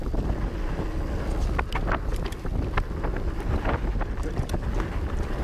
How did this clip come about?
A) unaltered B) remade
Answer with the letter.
A